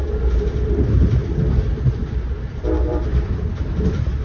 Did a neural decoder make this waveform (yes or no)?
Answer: yes